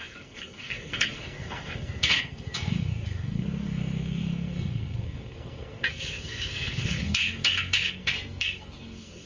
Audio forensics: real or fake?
fake